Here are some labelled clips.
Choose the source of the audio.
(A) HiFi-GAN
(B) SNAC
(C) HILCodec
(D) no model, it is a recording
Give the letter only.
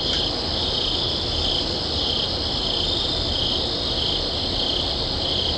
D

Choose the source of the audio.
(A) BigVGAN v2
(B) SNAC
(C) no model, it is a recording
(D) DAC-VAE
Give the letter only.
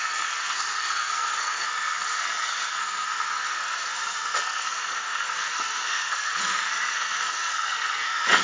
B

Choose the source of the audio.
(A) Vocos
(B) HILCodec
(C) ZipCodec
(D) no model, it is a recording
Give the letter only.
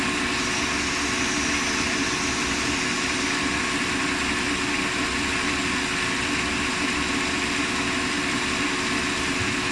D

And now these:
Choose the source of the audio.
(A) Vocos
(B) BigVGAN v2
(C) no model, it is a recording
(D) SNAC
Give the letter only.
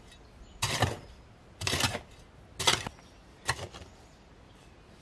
C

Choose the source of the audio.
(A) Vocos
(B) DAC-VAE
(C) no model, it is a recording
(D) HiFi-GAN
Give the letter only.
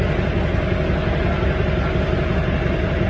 C